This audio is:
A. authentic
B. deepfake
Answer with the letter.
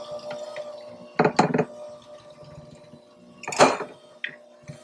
A